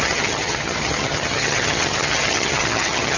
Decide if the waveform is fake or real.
fake